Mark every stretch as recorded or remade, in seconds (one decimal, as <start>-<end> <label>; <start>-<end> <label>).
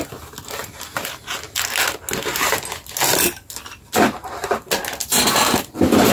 0.0-6.1 recorded